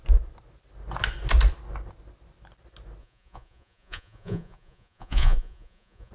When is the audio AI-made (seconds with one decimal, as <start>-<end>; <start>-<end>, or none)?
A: 3.0-6.1